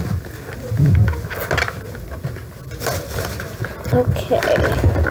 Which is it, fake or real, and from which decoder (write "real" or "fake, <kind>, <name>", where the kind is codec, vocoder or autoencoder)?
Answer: real